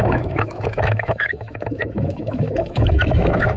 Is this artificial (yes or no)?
yes